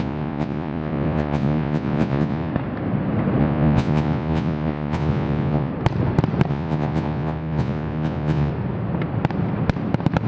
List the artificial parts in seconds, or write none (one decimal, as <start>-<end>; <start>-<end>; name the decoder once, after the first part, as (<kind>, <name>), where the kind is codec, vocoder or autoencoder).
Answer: 0.0-2.5 (vocoder, Vocos); 3.4-5.7; 6.5-8.5